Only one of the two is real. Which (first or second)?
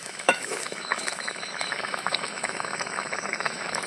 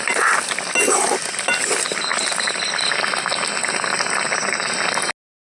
second